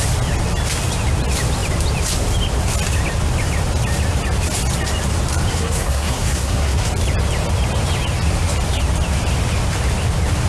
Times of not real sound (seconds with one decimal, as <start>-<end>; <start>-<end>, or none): 5.5-6.9